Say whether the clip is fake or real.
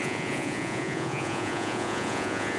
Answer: fake